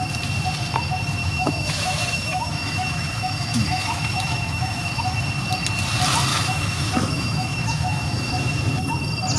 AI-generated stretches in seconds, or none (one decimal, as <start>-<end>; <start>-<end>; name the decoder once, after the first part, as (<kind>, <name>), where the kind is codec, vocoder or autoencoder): 1.2-5.0 (autoencoder, DAC-VAE); 6.3-8.3